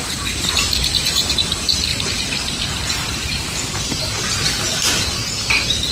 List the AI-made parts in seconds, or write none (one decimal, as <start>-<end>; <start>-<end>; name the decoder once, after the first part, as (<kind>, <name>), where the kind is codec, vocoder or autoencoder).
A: 1.9-4.0 (vocoder, BigVGAN v2)